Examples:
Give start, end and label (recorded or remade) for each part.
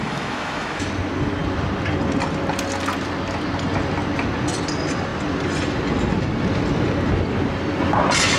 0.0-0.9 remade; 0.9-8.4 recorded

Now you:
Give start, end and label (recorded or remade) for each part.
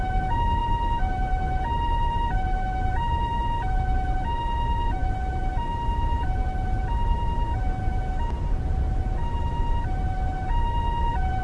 0.0-11.4 recorded